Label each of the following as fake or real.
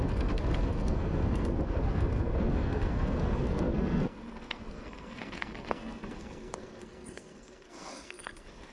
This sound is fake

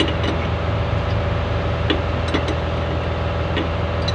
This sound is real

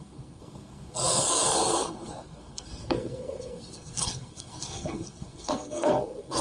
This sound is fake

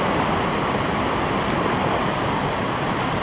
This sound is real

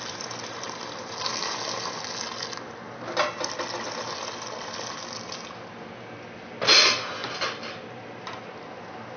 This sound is real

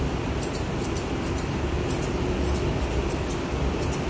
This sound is real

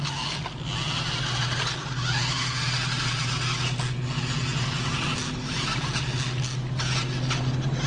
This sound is real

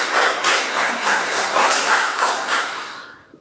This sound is fake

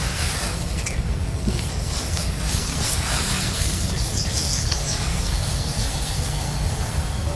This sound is fake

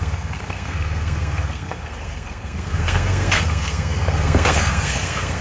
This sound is fake